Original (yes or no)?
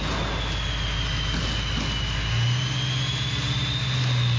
yes